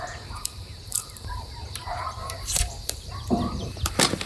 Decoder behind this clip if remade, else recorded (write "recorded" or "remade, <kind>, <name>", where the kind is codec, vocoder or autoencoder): remade, vocoder, BigVGAN v2